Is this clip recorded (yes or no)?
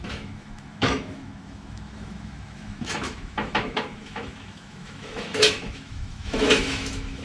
no